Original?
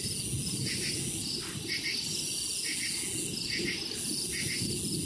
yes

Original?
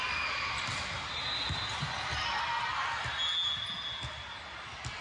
yes